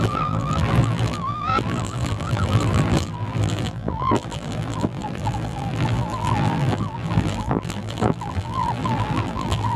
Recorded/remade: remade